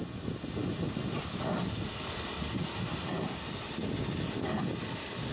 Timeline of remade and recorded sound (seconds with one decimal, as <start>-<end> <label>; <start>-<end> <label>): 0.0-5.3 recorded